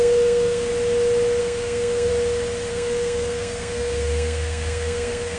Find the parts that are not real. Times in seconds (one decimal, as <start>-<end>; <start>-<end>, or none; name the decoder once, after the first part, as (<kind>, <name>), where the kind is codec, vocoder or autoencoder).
0.0-0.7 (codec, SNAC); 1.4-2.1; 2.7-5.4